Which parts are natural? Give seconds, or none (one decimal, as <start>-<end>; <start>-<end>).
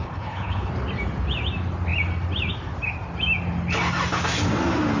0.7-5.0